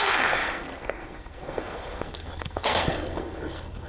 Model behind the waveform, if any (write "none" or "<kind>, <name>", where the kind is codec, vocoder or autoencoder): codec, SNAC